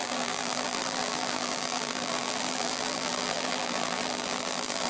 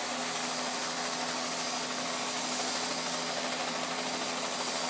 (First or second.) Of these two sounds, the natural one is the second